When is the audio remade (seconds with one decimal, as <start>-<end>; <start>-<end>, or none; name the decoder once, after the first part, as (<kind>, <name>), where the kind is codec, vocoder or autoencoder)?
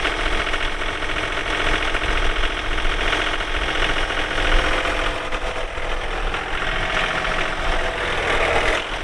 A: none